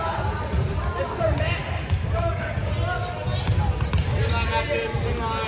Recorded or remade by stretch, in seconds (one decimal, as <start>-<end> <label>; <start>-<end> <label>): 0.0-1.6 recorded; 1.6-2.7 remade; 2.7-5.5 recorded